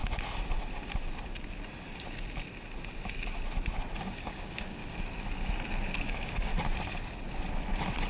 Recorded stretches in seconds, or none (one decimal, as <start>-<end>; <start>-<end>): 0.0-4.0; 4.8-6.0; 6.5-8.1